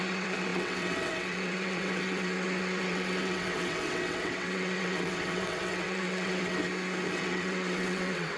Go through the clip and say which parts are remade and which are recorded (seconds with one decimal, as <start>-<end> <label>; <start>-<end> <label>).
0.0-6.6 remade; 6.6-7.1 recorded; 7.1-8.4 remade